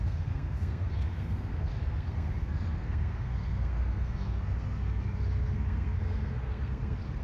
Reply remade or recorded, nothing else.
remade